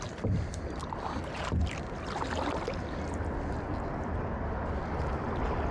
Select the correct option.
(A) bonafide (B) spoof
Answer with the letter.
A